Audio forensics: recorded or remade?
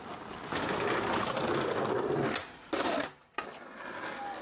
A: recorded